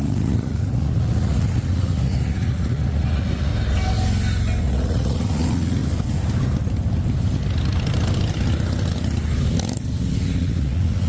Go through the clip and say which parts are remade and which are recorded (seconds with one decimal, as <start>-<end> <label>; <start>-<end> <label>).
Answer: 0.0-3.5 remade; 3.5-4.6 recorded; 4.6-5.8 remade; 5.8-10.4 recorded; 10.4-11.1 remade